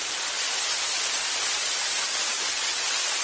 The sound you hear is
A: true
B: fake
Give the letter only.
A